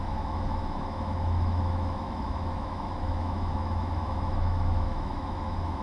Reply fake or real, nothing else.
fake